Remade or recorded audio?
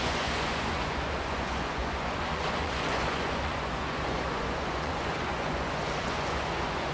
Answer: remade